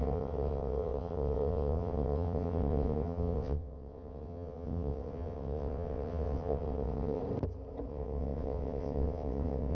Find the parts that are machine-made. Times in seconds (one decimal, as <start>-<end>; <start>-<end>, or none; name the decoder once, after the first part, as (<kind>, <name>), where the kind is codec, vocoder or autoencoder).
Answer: 0.0-7.2 (vocoder, WaveNeXt); 7.9-9.7